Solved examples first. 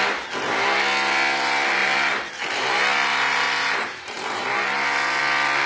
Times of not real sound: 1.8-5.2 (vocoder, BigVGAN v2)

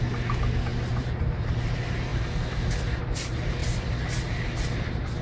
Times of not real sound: 0.7-1.7 (vocoder, BigVGAN v2)

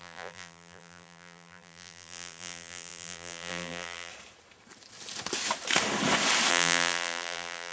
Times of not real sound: 0.0-4.1 (vocoder, BigVGAN v2); 6.5-7.7

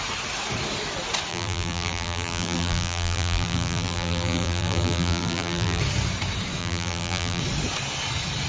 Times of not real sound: 1.3-5.8 (vocoder, BigVGAN v2); 6.6-7.4

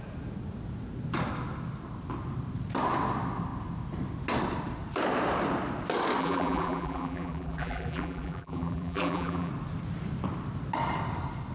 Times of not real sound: 6.2-9.5 (vocoder, BigVGAN v2)